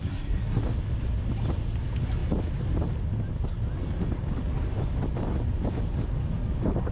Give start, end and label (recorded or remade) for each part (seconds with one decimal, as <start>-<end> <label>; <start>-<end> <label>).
0.0-0.6 remade; 0.6-6.9 recorded